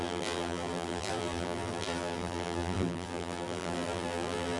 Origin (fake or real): fake